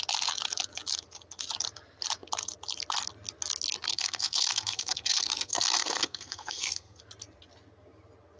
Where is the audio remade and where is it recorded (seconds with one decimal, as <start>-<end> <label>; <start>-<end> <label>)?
0.0-3.9 recorded; 3.9-7.0 remade; 7.0-8.4 recorded